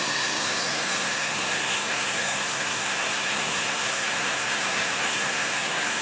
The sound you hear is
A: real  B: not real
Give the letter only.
B